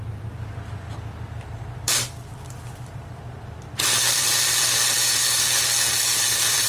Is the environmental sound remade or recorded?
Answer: remade